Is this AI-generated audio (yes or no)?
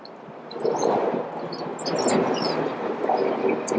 no